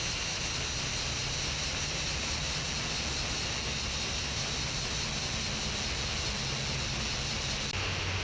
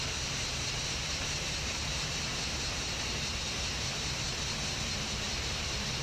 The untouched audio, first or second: first